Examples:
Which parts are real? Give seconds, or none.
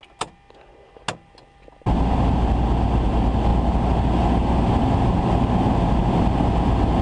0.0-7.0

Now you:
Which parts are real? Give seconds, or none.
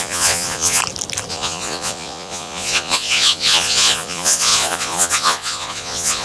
0.8-1.3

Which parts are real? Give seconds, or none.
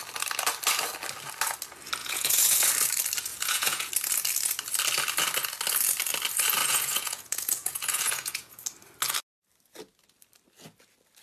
0.0-2.0; 2.7-3.3; 3.9-6.6; 8.6-11.2